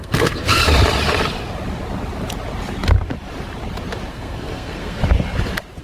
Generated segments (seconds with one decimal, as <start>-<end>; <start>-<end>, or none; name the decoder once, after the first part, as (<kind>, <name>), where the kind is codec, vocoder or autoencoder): 0.0-0.6 (codec, SNAC); 4.1-5.0